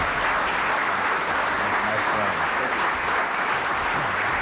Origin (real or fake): real